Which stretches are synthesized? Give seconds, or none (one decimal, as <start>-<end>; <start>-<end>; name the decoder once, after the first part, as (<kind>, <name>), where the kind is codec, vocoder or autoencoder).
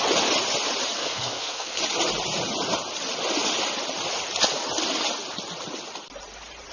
1.0-1.8 (codec, SNAC)